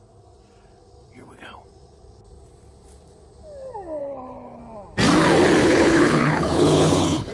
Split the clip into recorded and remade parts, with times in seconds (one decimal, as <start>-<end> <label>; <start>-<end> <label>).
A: 0.0-4.0 recorded; 4.0-4.6 remade; 4.6-5.6 recorded; 5.6-7.3 remade